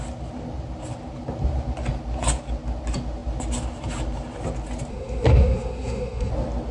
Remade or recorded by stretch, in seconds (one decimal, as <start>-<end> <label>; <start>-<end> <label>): 0.0-4.9 recorded; 4.9-6.3 remade; 6.3-6.7 recorded